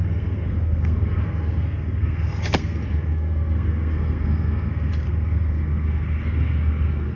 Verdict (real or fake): fake